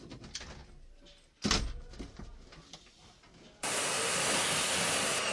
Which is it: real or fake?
real